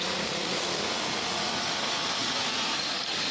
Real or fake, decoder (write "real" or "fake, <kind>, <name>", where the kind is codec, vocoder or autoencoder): fake, vocoder, Vocos